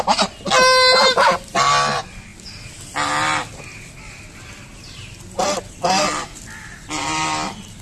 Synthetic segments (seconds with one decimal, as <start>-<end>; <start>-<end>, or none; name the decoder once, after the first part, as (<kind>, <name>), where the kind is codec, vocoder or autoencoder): none